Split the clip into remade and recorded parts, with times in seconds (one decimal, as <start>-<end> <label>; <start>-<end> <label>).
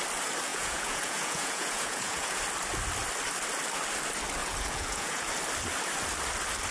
0.0-0.5 recorded; 0.5-2.4 remade; 2.4-4.4 recorded; 4.4-5.3 remade; 5.3-6.7 recorded